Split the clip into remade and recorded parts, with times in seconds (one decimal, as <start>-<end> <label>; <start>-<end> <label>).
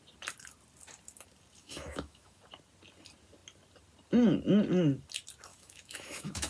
0.0-1.6 recorded; 1.6-2.4 remade; 2.4-5.5 recorded; 5.5-6.5 remade